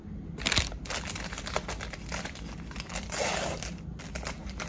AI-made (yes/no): no